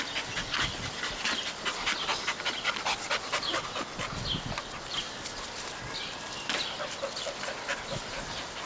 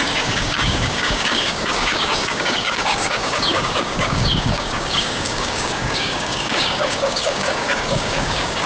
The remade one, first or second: second